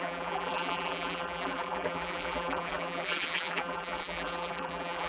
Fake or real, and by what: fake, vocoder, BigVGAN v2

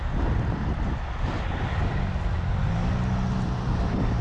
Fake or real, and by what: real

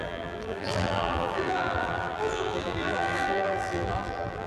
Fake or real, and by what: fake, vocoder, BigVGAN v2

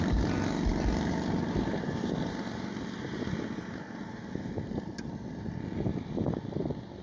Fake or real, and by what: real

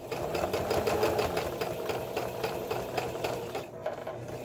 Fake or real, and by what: real